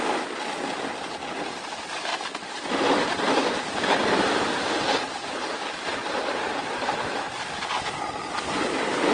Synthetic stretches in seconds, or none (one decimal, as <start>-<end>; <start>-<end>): none